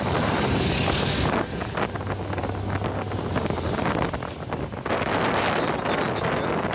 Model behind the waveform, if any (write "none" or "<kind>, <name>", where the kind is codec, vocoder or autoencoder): none